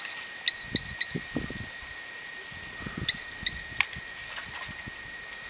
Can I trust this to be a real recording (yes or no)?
yes